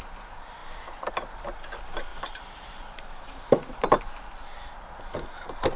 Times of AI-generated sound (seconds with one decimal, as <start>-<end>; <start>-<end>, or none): 2.1-4.0